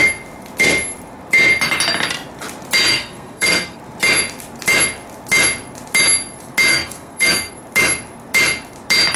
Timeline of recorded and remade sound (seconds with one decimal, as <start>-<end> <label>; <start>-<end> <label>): 0.0-2.9 recorded; 2.9-3.8 remade; 3.8-6.7 recorded; 6.7-7.5 remade; 7.5-9.2 recorded